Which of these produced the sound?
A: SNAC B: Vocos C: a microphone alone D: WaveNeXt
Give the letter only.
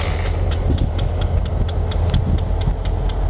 C